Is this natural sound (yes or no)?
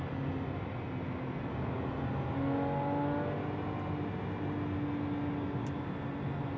yes